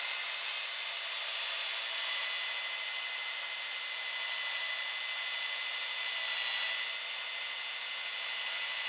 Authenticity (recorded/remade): recorded